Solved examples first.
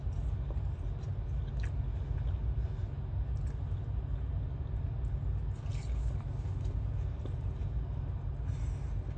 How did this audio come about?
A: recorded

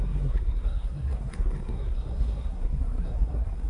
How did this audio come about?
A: remade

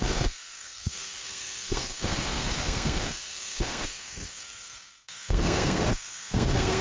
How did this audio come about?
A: remade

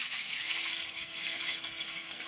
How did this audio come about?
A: remade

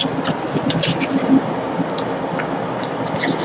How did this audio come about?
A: recorded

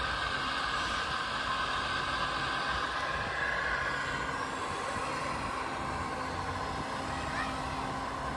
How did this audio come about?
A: recorded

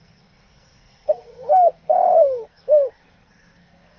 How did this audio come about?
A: remade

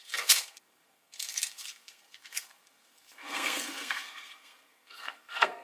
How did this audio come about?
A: remade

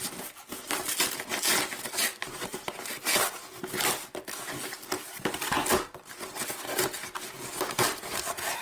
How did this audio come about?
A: recorded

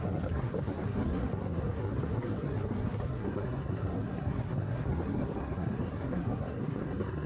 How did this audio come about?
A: remade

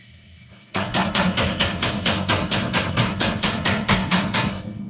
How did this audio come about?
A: remade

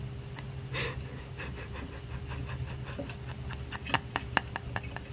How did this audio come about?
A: recorded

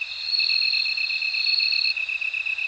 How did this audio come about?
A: recorded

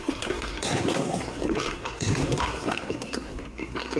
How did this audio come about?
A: remade